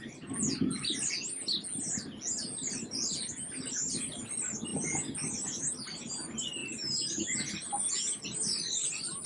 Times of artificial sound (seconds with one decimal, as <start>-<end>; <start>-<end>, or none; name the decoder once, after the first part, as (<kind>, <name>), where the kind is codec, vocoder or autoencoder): none